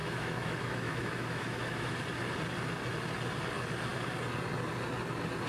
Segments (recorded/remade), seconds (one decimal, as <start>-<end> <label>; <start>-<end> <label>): 0.0-1.9 remade; 1.9-5.5 recorded